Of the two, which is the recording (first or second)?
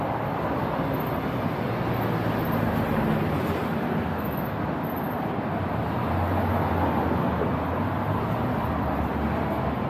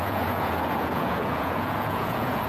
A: first